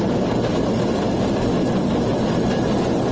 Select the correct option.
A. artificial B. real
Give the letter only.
B